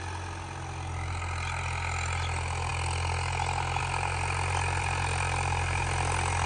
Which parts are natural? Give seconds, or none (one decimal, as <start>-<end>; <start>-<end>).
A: 0.0-6.5

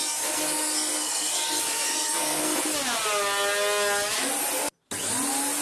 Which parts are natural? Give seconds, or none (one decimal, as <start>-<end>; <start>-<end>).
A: 2.6-5.6

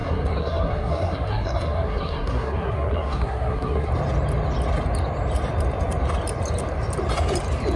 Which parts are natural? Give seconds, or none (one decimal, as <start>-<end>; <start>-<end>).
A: 3.9-7.8

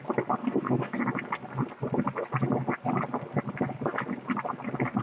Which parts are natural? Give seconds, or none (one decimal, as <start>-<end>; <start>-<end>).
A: 0.0-0.4; 1.0-5.0

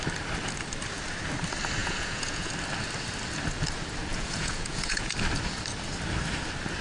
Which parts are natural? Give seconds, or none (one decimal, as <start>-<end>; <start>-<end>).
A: 0.0-1.8; 2.5-4.1; 5.1-6.8

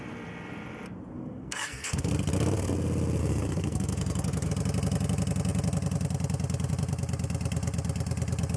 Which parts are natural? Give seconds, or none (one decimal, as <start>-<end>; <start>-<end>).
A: 0.0-1.2; 2.1-3.2; 4.5-8.6

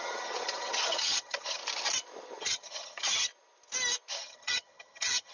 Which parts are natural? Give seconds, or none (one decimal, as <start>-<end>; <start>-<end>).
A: 1.6-2.4; 3.3-4.1

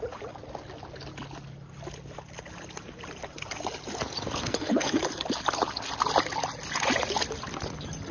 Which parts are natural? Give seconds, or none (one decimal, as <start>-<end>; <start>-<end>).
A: 0.0-4.4; 5.0-8.1